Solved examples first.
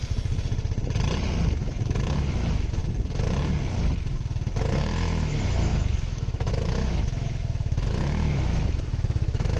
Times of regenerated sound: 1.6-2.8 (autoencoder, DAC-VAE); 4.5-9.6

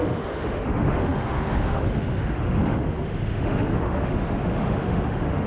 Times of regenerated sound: 0.0-5.5 (autoencoder, DAC-VAE)

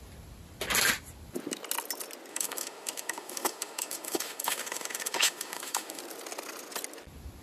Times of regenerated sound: 2.3-6.0 (autoencoder, DAC-VAE)

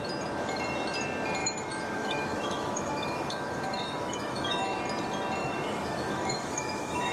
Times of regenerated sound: 1.4-4.8 (autoencoder, DAC-VAE); 5.4-7.1

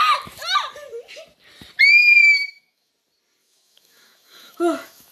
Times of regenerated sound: 2.2-2.9 (autoencoder, DAC-VAE); 3.4-5.1

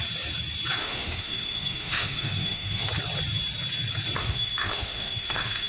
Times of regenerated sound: 0.8-2.9 (autoencoder, DAC-VAE); 4.2-5.7